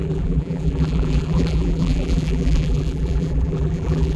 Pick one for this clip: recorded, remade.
remade